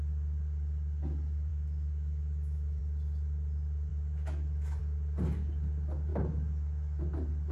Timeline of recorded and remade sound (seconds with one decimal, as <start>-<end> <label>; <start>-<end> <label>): 0.0-1.5 recorded; 1.5-2.8 remade; 2.8-3.9 recorded; 3.9-4.8 remade; 4.8-6.1 recorded; 6.1-7.0 remade; 7.0-7.5 recorded